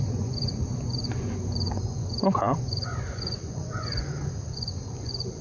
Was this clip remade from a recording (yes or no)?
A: yes